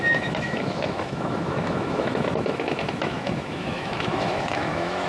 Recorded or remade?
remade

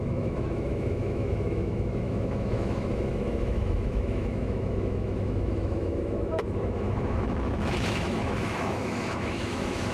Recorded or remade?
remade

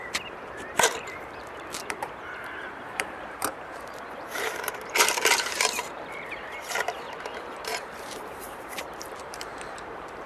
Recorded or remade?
remade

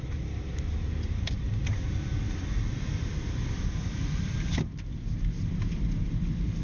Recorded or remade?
remade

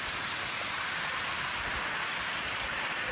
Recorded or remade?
recorded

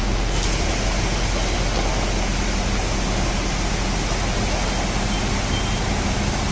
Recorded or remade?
recorded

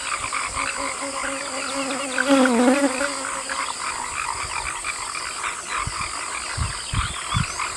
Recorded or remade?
recorded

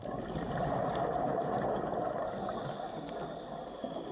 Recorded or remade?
recorded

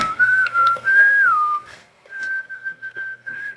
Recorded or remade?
remade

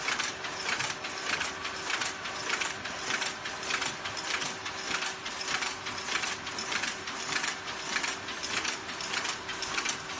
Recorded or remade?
recorded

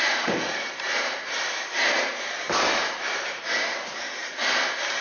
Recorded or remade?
remade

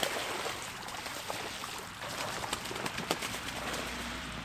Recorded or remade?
recorded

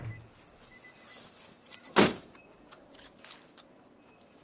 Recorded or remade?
recorded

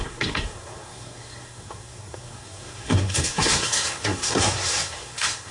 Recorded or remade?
remade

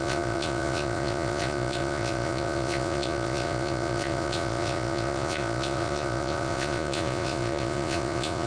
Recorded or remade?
remade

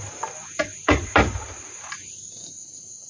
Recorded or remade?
remade